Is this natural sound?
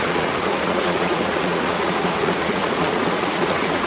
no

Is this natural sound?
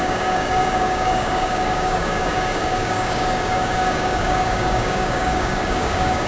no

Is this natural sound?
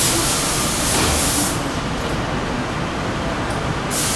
yes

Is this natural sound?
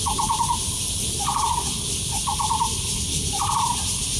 yes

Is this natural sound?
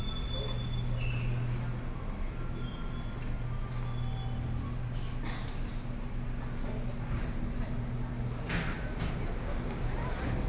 yes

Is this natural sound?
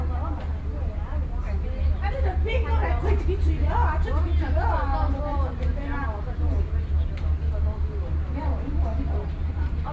yes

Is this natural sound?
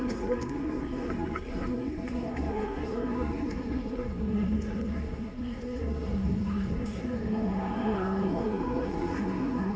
no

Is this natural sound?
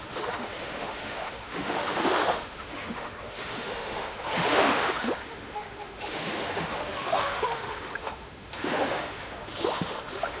no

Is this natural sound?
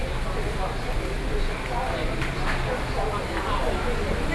yes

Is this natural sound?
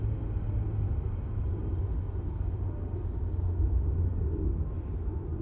yes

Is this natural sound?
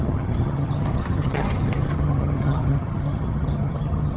no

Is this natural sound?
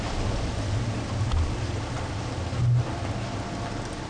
yes